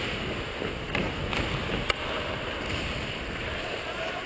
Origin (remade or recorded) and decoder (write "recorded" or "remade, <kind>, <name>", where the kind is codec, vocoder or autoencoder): recorded